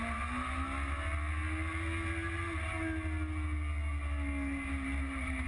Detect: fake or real real